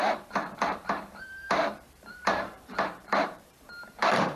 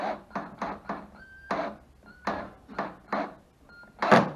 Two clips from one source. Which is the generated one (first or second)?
first